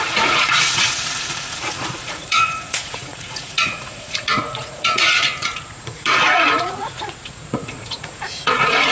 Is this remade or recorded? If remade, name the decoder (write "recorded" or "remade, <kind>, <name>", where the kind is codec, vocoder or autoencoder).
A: remade, vocoder, Vocos